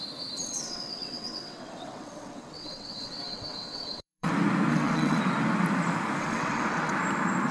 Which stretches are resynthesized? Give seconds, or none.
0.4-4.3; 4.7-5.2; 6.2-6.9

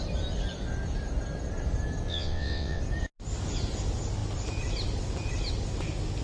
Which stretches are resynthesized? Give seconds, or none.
2.1-2.8

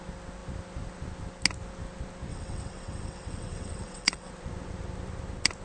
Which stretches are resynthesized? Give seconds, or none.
2.3-4.3

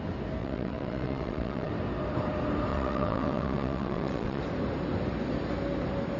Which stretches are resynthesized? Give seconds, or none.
0.4-1.7; 2.7-4.4

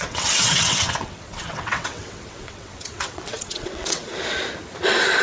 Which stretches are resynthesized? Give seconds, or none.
0.0-4.1

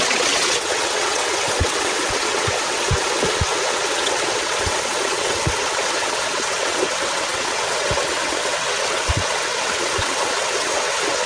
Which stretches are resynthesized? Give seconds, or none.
0.0-11.3

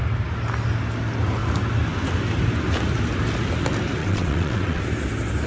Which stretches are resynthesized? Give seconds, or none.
4.0-4.8